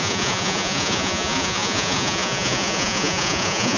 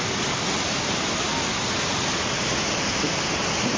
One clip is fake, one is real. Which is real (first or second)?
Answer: second